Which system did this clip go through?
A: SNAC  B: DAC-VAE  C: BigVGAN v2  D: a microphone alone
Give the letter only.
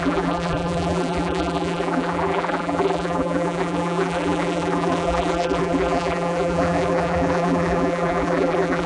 C